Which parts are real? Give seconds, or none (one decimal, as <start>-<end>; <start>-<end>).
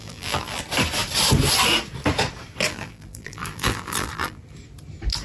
0.6-2.7; 4.4-5.2